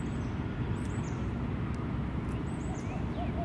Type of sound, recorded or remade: recorded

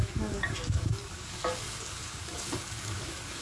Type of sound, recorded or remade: remade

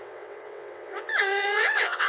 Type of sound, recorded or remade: remade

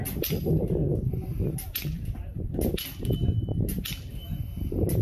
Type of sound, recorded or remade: recorded